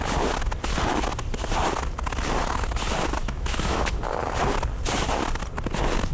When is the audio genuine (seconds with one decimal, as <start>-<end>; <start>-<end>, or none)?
0.0-3.2; 4.0-6.1